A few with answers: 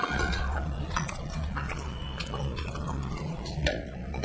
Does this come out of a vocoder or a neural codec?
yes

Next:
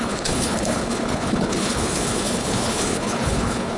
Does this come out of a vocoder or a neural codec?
yes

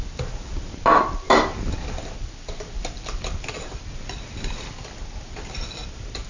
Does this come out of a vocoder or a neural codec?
no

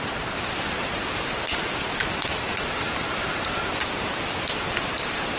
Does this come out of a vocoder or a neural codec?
yes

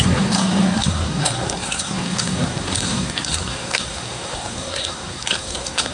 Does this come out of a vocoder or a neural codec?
yes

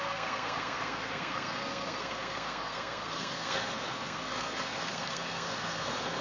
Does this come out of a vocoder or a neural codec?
yes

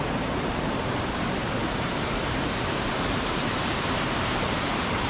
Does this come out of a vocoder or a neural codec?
yes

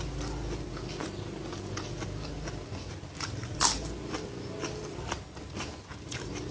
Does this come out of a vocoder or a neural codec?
no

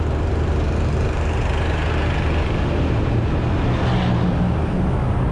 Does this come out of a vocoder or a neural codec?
no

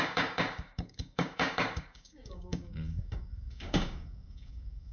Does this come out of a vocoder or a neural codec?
yes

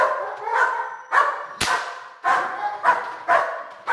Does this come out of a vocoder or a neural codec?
no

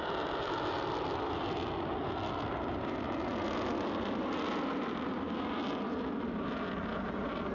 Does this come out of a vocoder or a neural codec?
no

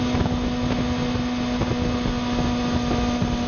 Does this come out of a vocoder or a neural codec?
no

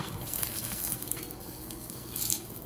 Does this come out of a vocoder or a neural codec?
yes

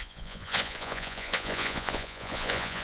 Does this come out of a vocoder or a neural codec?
yes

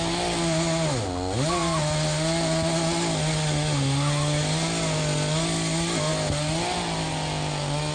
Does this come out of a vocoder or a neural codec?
no